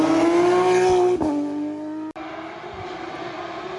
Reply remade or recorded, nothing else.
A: recorded